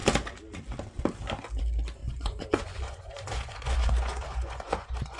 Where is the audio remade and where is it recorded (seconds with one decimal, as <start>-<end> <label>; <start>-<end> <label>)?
0.0-2.0 recorded; 2.0-5.2 remade